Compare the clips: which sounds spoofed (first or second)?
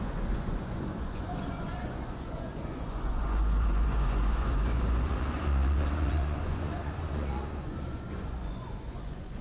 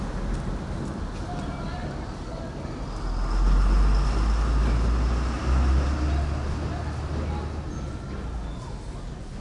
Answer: first